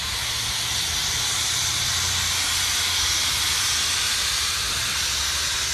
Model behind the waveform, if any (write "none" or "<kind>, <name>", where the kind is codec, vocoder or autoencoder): none